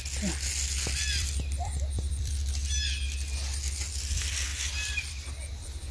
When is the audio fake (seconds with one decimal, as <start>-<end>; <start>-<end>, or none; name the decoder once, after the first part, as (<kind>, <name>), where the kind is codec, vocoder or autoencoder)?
1.2-2.3 (vocoder, BigVGAN v2); 4.5-5.3